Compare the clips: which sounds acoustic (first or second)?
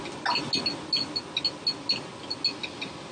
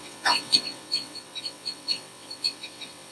first